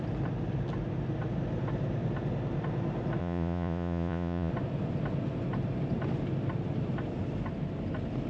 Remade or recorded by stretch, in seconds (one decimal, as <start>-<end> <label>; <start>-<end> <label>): 0.0-3.2 recorded; 3.2-4.5 remade; 4.5-8.3 recorded

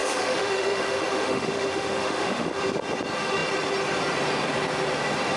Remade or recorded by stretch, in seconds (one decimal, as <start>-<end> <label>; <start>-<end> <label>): 0.0-2.6 remade; 2.6-5.4 recorded

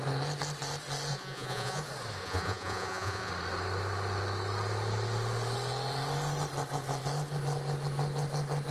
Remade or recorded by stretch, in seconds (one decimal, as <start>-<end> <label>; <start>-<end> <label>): 0.0-1.1 recorded; 1.1-1.8 remade; 1.8-2.2 recorded; 2.2-3.3 remade; 3.3-8.7 recorded

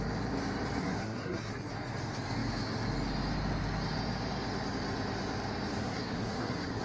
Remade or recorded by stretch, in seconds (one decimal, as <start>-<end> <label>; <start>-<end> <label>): 0.0-0.8 recorded; 0.8-1.5 remade; 1.5-5.8 recorded; 5.8-6.8 remade

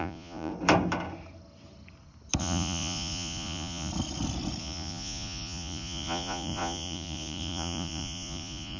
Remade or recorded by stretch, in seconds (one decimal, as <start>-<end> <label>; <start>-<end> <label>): 0.0-0.5 remade; 0.5-2.4 recorded; 2.4-3.9 remade; 3.9-4.6 recorded; 4.6-8.8 remade

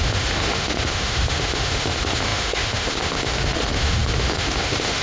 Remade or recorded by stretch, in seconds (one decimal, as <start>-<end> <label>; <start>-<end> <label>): 0.0-5.0 remade